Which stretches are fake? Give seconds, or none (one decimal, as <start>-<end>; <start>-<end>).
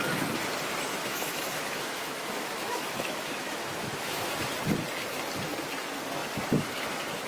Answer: 0.9-4.3